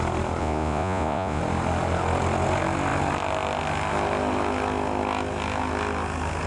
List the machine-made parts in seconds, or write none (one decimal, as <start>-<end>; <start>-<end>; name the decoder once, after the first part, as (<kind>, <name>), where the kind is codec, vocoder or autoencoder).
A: 0.4-1.4 (vocoder, Vocos)